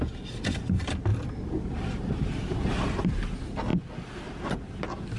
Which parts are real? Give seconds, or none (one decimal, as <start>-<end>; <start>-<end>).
0.0-5.2